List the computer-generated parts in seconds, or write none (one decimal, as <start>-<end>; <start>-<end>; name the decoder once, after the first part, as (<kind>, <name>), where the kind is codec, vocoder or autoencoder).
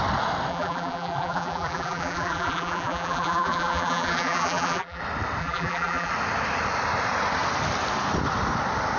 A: 0.5-5.0 (vocoder, BigVGAN v2); 5.4-6.1